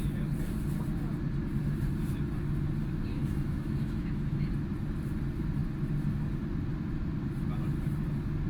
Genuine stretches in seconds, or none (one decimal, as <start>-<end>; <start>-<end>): 0.0-3.1; 4.5-8.5